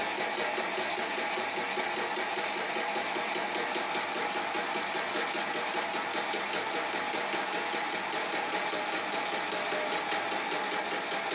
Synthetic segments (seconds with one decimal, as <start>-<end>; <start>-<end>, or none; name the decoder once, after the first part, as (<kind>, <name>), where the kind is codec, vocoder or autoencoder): none